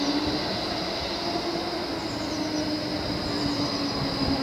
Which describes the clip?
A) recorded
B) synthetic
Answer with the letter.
A